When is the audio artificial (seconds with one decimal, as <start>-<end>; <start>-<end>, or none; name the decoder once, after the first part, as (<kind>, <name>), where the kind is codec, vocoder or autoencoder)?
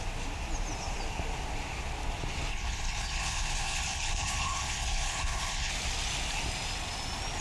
2.5-5.7 (codec, HILCodec)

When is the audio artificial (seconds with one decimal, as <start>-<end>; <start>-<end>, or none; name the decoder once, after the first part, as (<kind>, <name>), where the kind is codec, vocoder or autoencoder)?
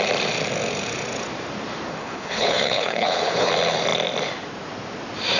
1.9-3.5 (codec, HILCodec)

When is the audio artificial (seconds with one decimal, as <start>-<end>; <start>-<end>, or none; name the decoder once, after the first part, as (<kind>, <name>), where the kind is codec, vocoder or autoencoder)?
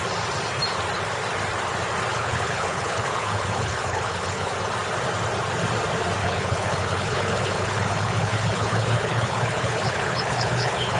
2.1-4.5 (codec, HILCodec); 6.2-11.0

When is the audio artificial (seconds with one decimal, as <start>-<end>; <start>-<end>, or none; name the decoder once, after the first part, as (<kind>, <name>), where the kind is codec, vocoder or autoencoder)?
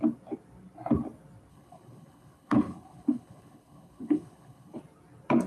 1.5-4.8 (codec, HILCodec)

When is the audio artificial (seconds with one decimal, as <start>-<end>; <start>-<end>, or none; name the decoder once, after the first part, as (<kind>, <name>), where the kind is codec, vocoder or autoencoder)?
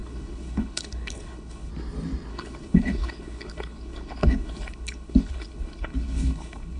0.0-1.7 (codec, HILCodec); 2.3-6.8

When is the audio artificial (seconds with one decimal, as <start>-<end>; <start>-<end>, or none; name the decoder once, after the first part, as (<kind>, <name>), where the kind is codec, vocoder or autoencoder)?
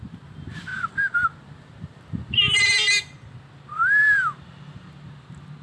none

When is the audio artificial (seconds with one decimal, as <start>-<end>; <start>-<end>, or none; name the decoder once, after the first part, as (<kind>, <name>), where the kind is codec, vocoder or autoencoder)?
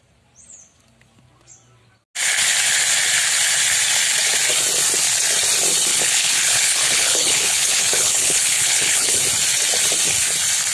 5.9-9.2 (codec, HILCodec)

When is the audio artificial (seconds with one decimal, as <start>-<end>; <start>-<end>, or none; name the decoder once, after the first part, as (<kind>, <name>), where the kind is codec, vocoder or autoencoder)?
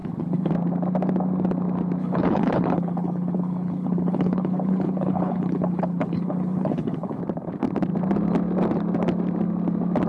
0.0-0.5 (codec, HILCodec); 2.0-7.2